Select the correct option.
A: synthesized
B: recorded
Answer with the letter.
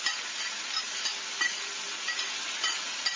B